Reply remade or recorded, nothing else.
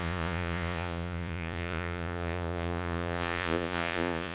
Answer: remade